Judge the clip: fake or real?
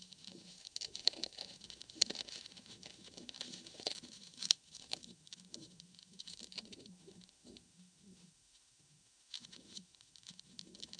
fake